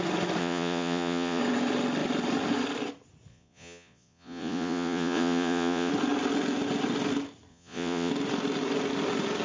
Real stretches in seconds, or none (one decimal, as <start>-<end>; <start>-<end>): 0.0-0.4; 1.4-3.3; 5.9-7.5; 8.1-9.4